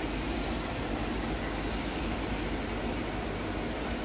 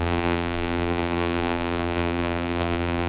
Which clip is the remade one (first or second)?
second